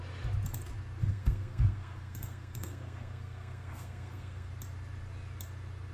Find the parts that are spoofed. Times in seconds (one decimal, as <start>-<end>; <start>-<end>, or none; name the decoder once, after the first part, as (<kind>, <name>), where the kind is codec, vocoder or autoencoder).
1.0-4.5 (codec, SNAC)